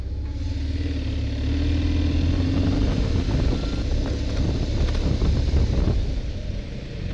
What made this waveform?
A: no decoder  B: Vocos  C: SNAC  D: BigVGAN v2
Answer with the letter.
A